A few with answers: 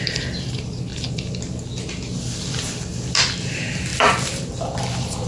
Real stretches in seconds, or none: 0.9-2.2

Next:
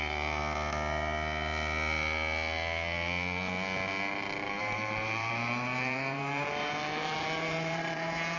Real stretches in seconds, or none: 0.4-4.6

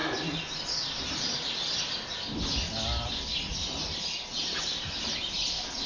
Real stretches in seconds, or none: 0.0-5.9

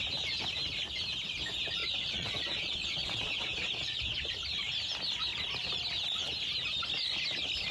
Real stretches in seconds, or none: 0.0-1.8; 4.3-7.7